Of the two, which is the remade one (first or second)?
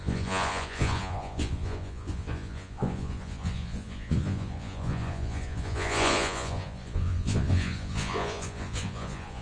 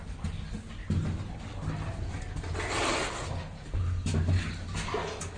first